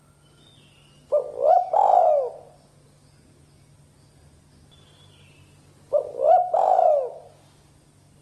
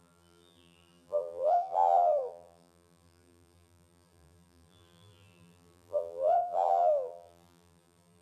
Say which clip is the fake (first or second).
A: second